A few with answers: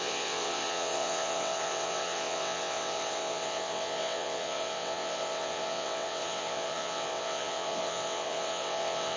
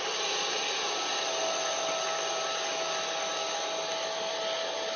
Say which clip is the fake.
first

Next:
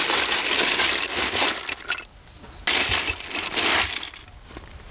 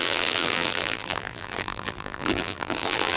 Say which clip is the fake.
second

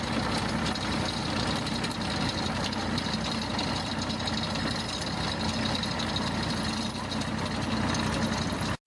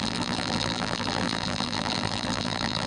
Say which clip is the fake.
second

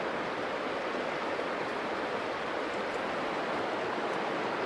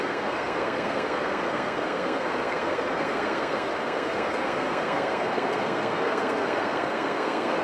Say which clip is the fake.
second